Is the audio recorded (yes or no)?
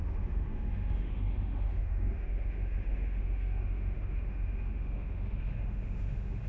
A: no